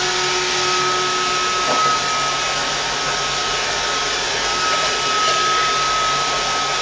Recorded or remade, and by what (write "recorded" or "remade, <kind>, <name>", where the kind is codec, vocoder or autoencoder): recorded